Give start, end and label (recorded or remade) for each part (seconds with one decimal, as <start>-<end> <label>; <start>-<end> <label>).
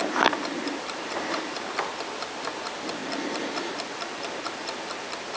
0.0-1.7 remade; 1.7-3.0 recorded; 3.0-5.4 remade